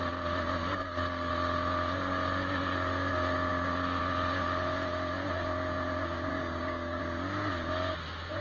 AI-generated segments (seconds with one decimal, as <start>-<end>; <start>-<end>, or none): 0.6-1.3; 6.3-7.0